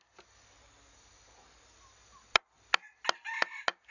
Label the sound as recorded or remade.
recorded